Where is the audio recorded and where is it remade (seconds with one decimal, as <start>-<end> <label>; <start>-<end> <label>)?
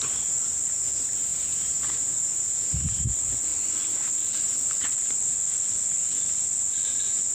0.0-1.3 recorded; 1.3-2.3 remade; 2.3-7.3 recorded